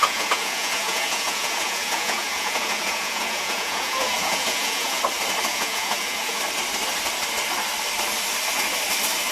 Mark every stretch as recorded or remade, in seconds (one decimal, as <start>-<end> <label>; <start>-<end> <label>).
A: 0.0-5.0 remade; 5.0-5.5 recorded; 5.5-6.4 remade; 6.4-9.3 recorded